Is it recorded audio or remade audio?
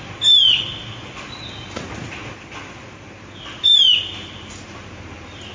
recorded